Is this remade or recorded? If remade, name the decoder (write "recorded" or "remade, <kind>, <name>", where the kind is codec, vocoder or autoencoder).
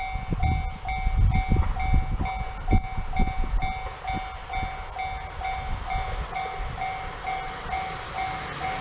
recorded